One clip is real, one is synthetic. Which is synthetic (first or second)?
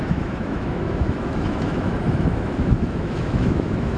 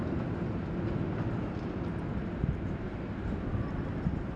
first